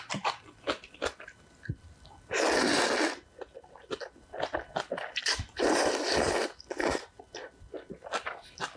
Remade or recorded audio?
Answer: remade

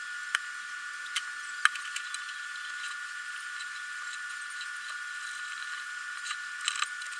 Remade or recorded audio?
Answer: recorded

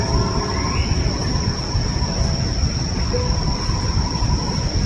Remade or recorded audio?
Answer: recorded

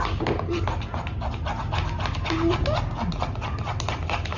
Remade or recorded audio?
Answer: recorded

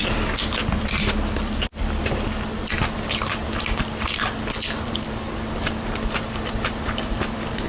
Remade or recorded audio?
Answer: recorded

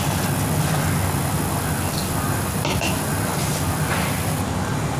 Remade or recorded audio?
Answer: recorded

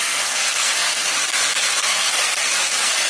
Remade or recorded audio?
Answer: remade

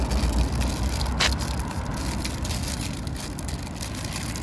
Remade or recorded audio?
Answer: recorded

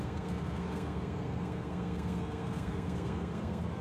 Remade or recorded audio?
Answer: remade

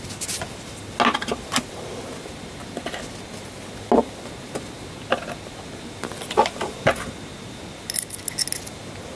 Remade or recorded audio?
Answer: recorded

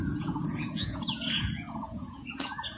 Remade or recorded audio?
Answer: remade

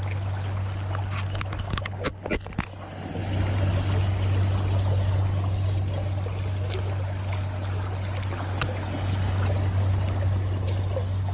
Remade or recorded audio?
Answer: recorded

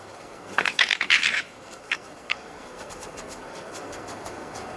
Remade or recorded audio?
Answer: remade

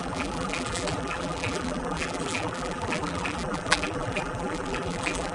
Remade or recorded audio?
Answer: remade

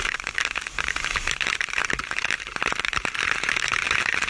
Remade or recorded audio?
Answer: remade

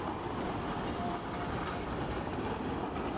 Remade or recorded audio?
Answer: recorded